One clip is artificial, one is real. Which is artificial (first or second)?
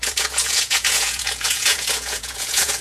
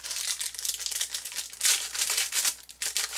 first